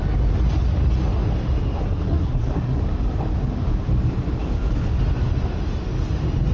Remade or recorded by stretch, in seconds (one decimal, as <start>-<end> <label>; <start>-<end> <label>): 0.0-1.8 recorded; 1.8-2.8 remade; 2.8-6.5 recorded